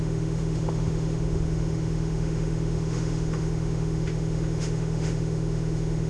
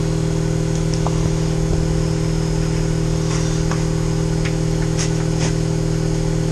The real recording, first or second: second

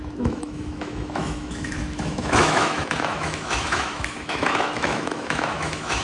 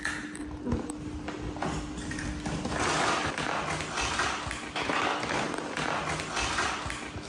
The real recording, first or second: second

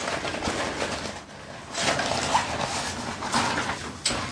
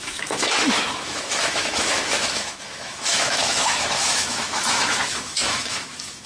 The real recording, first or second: first